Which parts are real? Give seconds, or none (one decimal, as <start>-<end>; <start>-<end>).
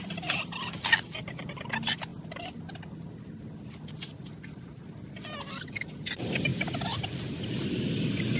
0.0-8.4